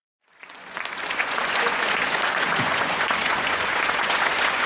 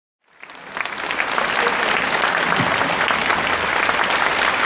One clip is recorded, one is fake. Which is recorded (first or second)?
second